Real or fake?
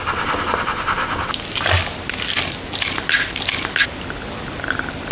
fake